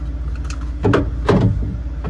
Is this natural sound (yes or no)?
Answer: yes